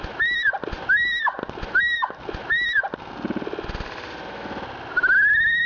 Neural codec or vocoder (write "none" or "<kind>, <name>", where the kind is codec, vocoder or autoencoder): none